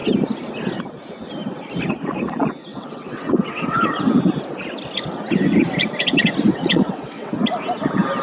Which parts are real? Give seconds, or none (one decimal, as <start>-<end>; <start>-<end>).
0.0-2.7; 4.0-6.5; 7.3-8.2